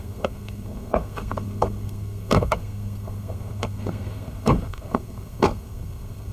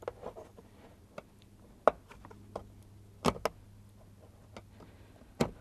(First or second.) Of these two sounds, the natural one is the second